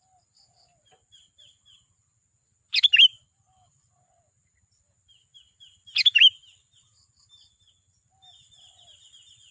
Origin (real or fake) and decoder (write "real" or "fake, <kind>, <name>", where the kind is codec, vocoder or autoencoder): real